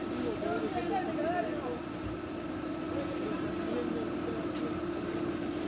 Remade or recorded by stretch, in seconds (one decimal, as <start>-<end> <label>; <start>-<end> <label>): 0.0-5.7 recorded